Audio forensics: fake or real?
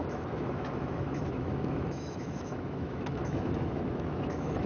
fake